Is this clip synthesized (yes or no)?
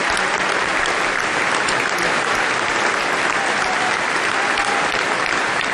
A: yes